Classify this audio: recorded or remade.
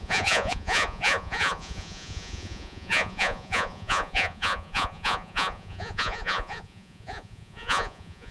remade